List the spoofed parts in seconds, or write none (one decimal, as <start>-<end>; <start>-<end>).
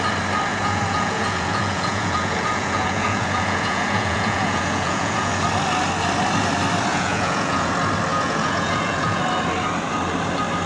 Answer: 0.5-5.3; 6.9-7.7; 8.1-9.2